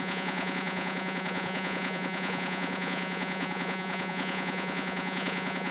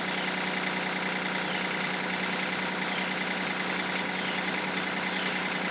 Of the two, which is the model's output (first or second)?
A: first